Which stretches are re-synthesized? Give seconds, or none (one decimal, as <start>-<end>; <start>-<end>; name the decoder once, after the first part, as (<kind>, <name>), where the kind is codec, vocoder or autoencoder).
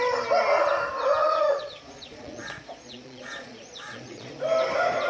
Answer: 1.2-4.3 (vocoder, Vocos)